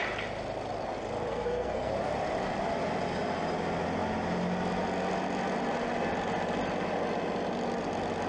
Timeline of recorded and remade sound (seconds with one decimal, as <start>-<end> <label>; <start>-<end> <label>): 0.0-1.3 recorded; 1.3-1.9 remade; 1.9-8.3 recorded